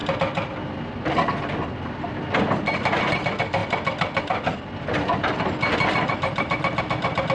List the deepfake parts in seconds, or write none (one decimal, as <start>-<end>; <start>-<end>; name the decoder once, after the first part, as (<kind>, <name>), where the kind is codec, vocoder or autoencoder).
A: none